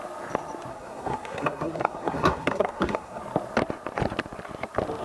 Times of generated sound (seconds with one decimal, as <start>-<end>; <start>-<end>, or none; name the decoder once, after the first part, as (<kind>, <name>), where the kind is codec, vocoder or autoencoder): 0.7-3.2 (codec, SNAC)